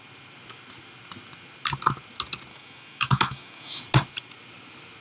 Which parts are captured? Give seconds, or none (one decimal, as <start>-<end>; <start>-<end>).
0.0-2.5; 3.8-5.0